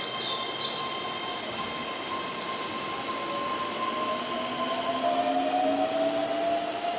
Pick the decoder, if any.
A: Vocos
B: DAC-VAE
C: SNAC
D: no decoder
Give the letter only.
D